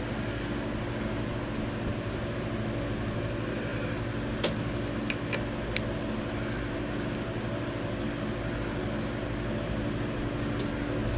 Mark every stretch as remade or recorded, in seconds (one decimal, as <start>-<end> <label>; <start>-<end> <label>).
0.0-11.2 recorded